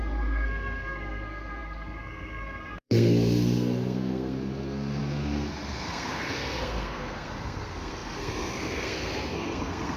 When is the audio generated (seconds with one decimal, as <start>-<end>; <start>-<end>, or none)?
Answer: 0.0-10.0